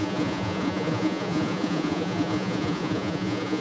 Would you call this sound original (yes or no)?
no